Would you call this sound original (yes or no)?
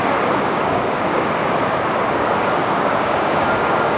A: no